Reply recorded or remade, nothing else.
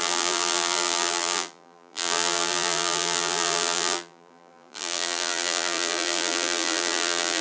remade